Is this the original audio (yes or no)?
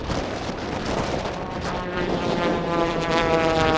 no